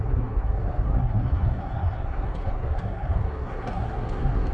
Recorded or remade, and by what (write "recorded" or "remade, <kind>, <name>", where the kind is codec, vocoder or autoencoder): remade, codec, SNAC